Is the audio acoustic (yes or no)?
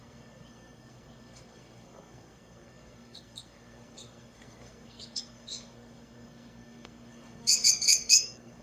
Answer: no